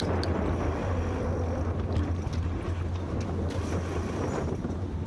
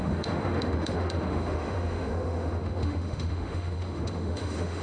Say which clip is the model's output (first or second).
second